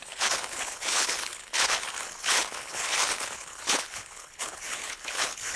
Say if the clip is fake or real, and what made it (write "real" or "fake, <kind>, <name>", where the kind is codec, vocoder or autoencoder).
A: fake, codec, HILCodec